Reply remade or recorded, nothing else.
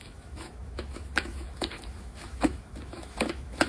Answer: remade